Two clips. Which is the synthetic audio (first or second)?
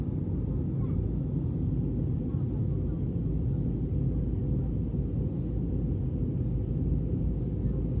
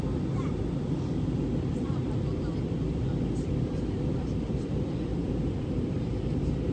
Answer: second